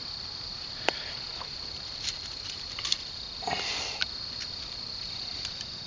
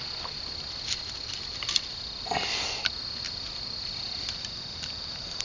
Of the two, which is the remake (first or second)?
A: first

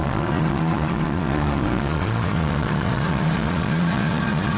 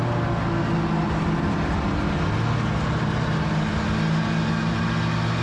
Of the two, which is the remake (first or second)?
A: first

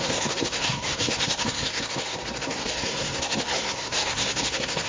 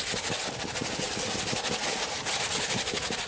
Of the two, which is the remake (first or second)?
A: first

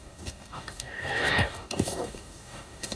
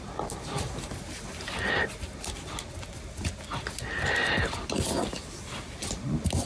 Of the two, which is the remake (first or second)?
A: first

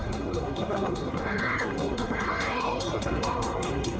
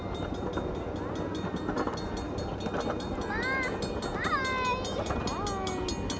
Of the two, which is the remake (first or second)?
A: first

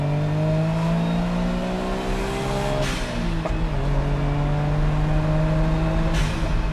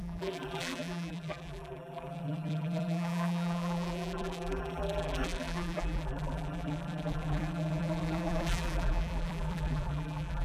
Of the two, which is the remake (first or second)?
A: second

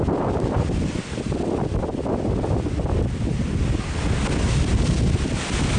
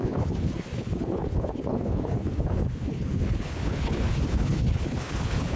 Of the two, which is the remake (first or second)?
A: second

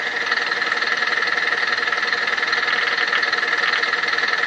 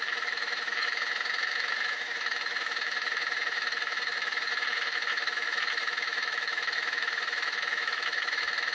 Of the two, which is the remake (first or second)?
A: second